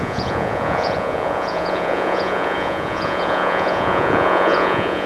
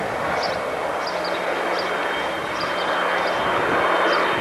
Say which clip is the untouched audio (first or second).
second